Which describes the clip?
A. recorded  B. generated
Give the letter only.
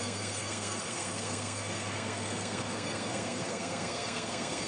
B